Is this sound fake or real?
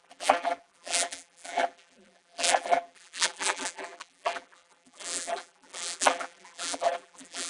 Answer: fake